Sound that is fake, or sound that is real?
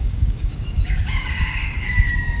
fake